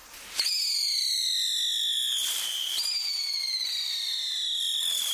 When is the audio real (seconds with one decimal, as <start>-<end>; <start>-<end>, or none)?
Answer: 0.0-1.0; 1.5-4.6